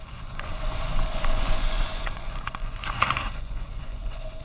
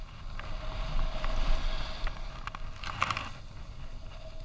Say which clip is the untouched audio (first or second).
second